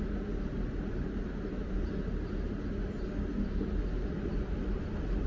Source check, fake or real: real